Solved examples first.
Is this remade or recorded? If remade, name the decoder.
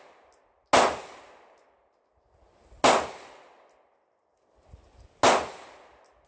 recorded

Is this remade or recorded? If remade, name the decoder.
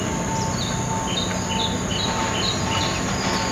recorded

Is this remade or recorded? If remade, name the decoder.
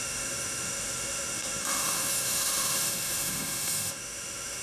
remade, autoencoder, DAC-VAE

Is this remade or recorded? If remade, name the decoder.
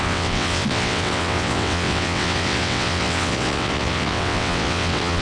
remade, vocoder, WaveNeXt